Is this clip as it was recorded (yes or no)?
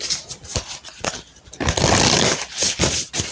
yes